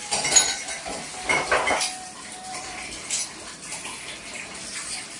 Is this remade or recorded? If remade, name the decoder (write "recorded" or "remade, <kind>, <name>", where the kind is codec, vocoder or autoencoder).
recorded